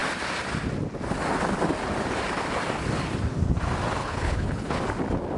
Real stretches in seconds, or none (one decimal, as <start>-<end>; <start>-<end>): 0.0-4.0; 4.8-5.4